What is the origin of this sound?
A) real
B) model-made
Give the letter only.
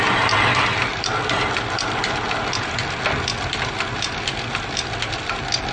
A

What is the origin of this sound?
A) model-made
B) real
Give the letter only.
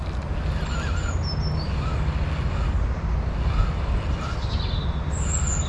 B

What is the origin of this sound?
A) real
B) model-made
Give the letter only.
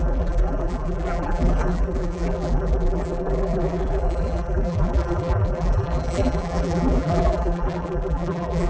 B